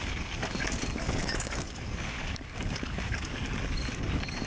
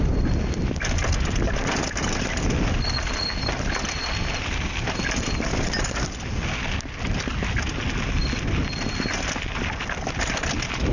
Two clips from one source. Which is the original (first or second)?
second